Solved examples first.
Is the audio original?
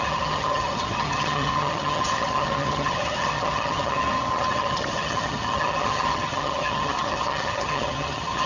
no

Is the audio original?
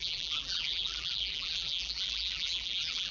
no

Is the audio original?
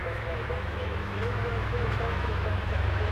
no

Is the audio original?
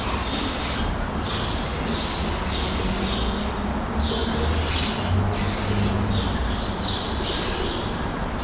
yes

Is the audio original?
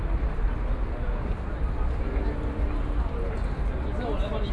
yes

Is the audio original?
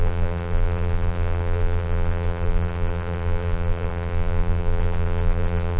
no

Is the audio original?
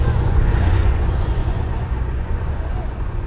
no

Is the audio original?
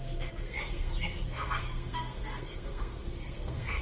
no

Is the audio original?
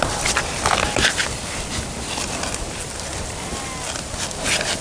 yes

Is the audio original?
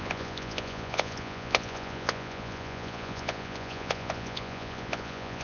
no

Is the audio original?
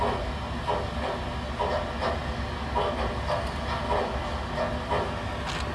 yes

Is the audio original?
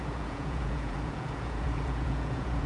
no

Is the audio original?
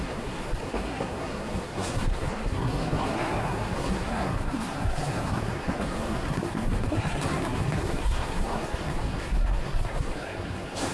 no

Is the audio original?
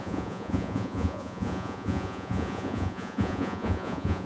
no